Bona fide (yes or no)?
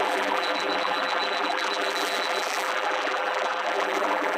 no